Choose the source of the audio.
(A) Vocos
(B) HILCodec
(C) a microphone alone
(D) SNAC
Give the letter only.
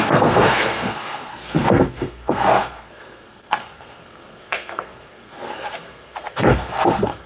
D